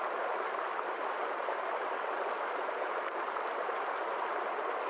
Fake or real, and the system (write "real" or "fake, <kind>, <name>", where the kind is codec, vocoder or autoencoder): real